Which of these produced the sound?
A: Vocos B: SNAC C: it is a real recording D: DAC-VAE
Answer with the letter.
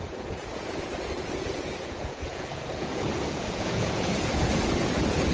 A